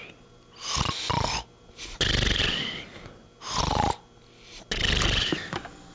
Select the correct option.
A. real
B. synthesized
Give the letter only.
A